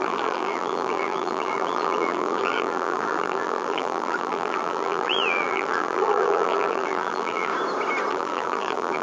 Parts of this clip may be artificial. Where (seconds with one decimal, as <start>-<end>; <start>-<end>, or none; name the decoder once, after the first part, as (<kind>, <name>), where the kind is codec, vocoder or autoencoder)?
0.0-7.5 (vocoder, BigVGAN v2); 8.1-9.0